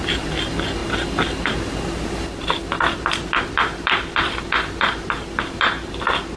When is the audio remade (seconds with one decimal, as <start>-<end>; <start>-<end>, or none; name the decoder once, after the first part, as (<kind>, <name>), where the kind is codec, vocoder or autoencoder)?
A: none